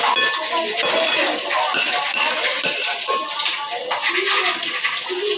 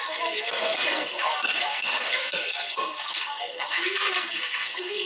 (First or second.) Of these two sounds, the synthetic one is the second